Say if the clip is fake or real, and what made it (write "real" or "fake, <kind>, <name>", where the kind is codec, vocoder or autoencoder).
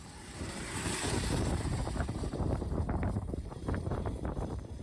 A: fake, vocoder, BigVGAN v2